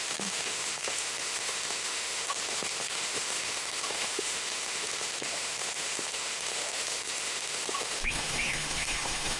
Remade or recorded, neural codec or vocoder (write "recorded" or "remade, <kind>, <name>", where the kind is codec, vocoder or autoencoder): remade, autoencoder, DAC-VAE